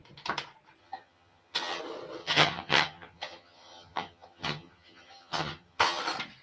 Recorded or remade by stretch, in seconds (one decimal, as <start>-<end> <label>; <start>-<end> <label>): 0.0-0.8 recorded; 0.8-1.8 remade; 1.8-2.2 recorded; 2.2-6.0 remade; 6.0-6.4 recorded